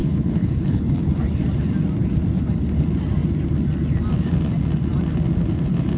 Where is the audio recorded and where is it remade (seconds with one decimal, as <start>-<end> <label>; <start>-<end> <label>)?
0.0-0.8 remade; 0.8-6.0 recorded

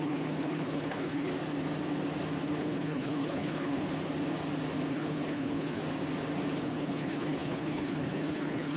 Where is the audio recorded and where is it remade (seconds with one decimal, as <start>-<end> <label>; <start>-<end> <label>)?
0.0-1.3 remade; 1.3-2.6 recorded; 2.6-3.9 remade; 3.9-4.9 recorded; 4.9-5.8 remade; 5.8-6.6 recorded; 6.6-8.8 remade